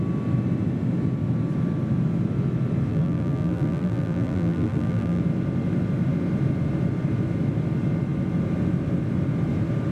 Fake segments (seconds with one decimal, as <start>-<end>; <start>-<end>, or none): 2.9-5.2